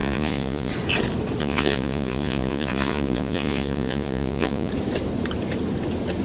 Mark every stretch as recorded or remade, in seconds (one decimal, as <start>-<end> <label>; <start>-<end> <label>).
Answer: 0.0-0.7 remade; 0.7-1.4 recorded; 1.4-4.7 remade; 4.7-6.2 recorded